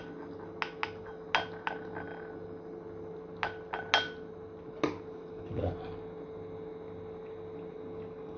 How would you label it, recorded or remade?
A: recorded